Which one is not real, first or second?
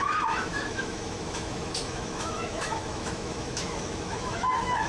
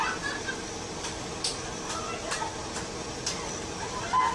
first